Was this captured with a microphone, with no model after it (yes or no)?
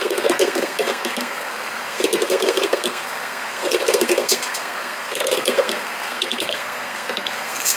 no